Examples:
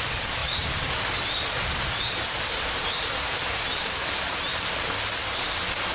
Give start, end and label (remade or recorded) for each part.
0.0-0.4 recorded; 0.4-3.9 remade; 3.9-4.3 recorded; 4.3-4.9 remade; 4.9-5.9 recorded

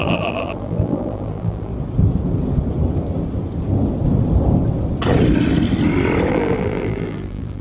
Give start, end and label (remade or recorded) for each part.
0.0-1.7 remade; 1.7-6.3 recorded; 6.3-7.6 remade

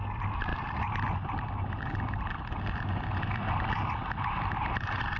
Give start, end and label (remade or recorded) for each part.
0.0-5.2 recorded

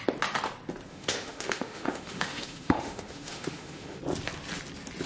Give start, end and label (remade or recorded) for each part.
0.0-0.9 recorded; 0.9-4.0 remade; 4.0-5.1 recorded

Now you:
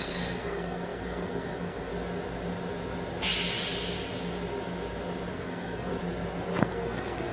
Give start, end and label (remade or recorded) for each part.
0.0-1.9 remade; 1.9-5.3 recorded; 5.3-5.9 remade; 5.9-6.6 recorded; 6.6-7.3 remade

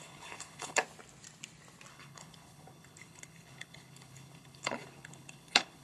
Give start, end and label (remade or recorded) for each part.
0.0-0.8 remade; 0.8-1.9 recorded; 1.9-5.8 remade

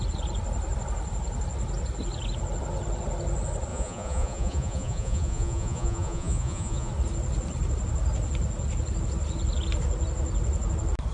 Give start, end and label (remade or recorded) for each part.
0.0-3.7 recorded; 3.7-6.9 remade; 6.9-11.1 recorded